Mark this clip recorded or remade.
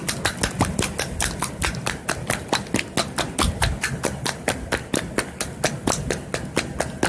recorded